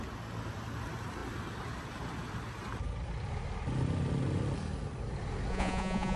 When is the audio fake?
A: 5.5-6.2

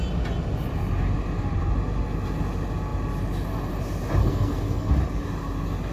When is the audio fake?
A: 4.2-4.9

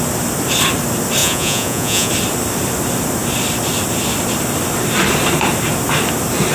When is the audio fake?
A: 1.2-2.1

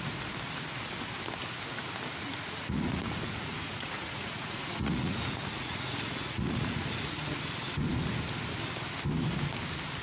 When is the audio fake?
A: 2.2-7.4

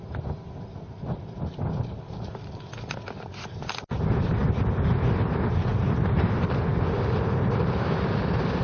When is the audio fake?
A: none

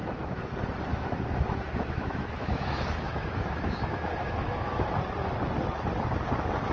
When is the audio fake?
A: 0.0-0.5; 0.9-4.9

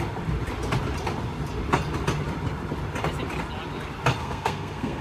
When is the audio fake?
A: 4.2-5.0

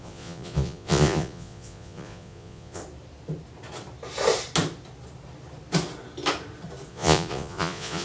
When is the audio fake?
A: 0.0-2.8; 6.9-8.0